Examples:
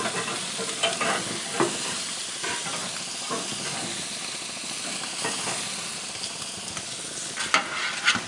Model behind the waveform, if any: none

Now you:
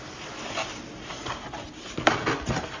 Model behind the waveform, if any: none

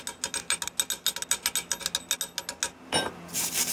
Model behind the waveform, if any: none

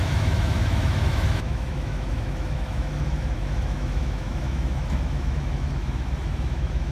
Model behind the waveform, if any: autoencoder, DAC-VAE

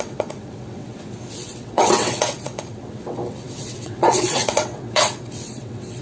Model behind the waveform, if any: vocoder, WaveNeXt